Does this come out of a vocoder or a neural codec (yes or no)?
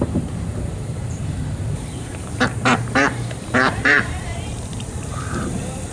yes